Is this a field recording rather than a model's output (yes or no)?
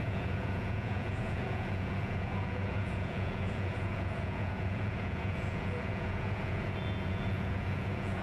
no